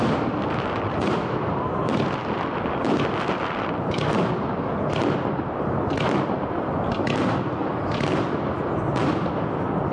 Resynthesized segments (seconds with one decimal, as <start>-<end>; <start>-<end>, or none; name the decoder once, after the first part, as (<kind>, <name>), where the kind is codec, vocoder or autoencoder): none